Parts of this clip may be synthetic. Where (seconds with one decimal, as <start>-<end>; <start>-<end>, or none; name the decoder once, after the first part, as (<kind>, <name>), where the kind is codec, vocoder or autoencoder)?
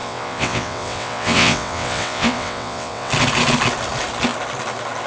0.0-3.1 (vocoder, WaveNeXt)